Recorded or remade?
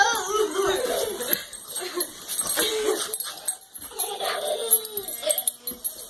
recorded